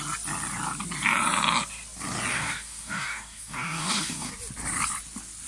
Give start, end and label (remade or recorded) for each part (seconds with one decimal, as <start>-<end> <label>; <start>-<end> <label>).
0.0-2.3 recorded; 2.3-4.3 remade; 4.3-5.5 recorded